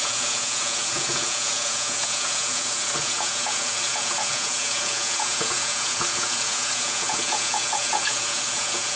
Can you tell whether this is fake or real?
fake